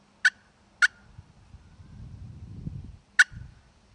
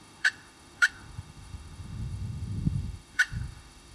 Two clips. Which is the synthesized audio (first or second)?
second